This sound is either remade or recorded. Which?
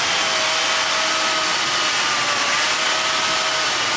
recorded